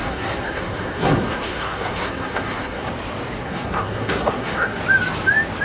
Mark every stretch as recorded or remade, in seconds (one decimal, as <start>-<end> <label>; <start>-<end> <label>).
0.0-2.9 remade; 2.9-3.4 recorded; 3.4-4.8 remade; 4.8-5.6 recorded